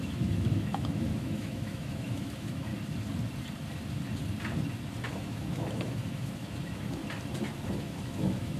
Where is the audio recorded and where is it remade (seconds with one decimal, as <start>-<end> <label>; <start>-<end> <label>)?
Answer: 0.0-2.7 remade; 2.7-5.1 recorded; 5.1-7.0 remade; 7.0-7.7 recorded; 7.7-8.6 remade

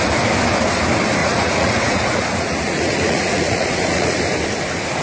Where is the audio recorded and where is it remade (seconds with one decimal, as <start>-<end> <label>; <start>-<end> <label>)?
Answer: 0.0-1.2 recorded; 1.2-4.2 remade; 4.2-5.0 recorded

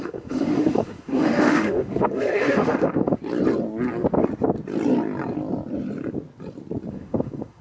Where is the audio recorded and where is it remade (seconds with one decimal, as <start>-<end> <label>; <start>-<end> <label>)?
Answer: 0.0-3.2 remade; 3.2-6.9 recorded; 6.9-7.6 remade

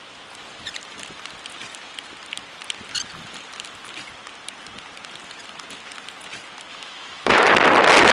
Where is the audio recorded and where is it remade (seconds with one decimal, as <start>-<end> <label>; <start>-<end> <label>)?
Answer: 0.0-6.7 recorded; 6.7-7.5 remade; 7.5-8.1 recorded

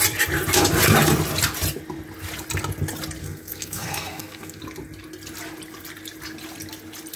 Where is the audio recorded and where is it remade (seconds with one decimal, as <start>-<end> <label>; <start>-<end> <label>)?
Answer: 0.0-3.2 recorded; 3.2-4.6 remade; 4.6-7.2 recorded

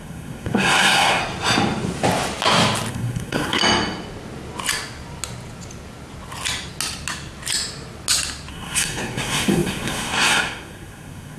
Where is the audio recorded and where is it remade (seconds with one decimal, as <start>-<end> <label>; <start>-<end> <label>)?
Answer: 0.0-1.2 remade; 1.2-2.9 recorded; 2.9-3.6 remade; 3.6-8.5 recorded; 8.5-11.4 remade